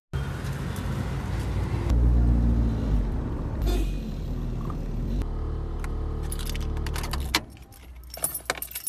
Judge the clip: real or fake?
real